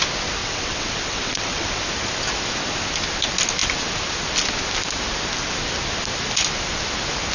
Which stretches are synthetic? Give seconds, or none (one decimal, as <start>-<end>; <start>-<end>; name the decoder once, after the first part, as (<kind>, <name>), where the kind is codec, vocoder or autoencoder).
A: 0.4-1.8 (vocoder, WaveNeXt)